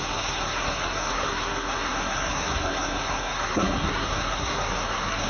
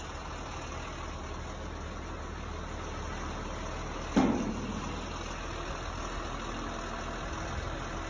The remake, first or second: first